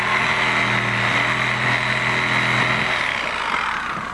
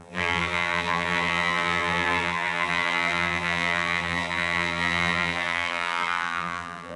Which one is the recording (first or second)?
first